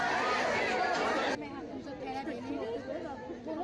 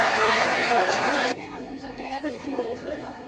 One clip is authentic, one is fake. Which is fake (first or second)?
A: second